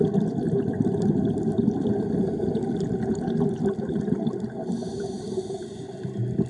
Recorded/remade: recorded